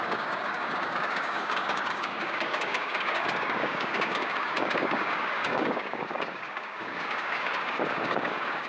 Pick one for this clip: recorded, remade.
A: remade